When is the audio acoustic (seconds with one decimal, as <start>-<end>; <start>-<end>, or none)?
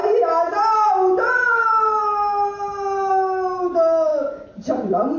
0.0-5.2